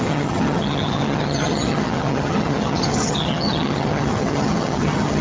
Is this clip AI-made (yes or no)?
yes